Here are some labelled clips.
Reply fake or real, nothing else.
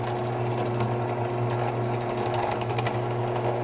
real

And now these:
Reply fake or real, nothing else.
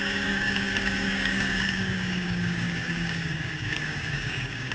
fake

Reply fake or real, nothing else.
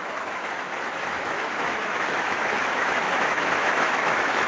fake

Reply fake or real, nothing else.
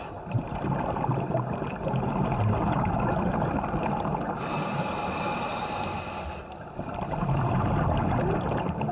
real